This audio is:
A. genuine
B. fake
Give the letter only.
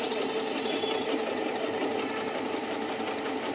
A